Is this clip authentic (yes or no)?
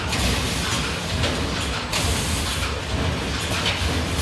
yes